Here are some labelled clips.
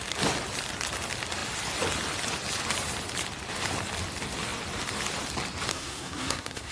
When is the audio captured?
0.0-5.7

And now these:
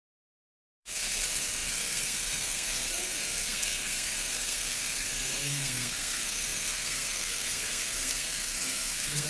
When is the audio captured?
none